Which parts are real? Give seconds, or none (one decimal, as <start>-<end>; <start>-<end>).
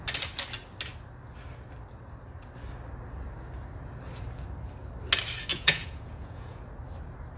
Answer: 0.0-5.5; 6.6-7.4